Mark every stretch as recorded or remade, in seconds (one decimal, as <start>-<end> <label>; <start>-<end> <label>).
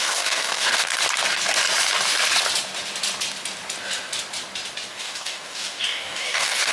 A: 0.0-0.9 remade; 0.9-4.9 recorded; 4.9-6.7 remade